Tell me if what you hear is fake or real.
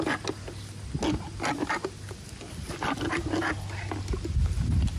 real